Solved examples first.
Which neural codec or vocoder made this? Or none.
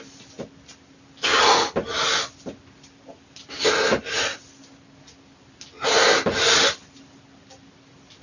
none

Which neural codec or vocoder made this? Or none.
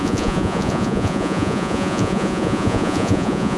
vocoder, Vocos